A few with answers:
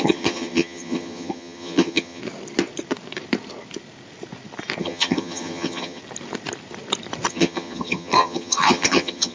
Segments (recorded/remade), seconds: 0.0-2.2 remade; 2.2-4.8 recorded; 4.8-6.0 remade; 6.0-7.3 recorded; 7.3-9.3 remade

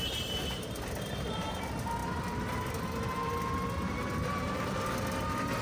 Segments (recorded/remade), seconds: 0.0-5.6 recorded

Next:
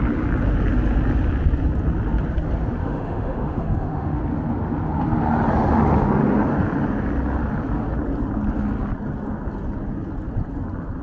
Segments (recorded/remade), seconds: 0.0-2.8 recorded; 2.8-4.2 remade; 4.2-11.0 recorded

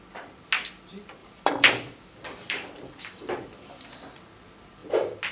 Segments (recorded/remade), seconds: 0.0-1.2 recorded; 1.2-4.2 remade; 4.2-5.3 recorded

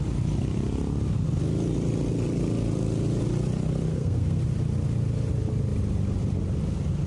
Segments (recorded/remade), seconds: 0.0-3.9 recorded; 3.9-4.4 remade; 4.4-7.1 recorded

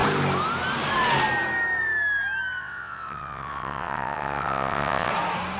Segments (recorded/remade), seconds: 0.0-2.6 recorded; 2.6-5.1 remade; 5.1-5.6 recorded

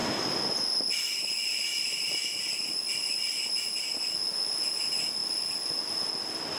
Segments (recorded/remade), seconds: 0.0-6.6 recorded